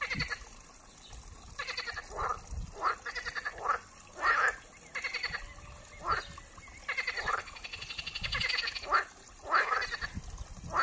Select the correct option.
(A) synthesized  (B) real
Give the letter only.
B